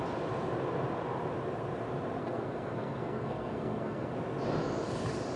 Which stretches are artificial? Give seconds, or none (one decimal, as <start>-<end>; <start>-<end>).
2.2-4.1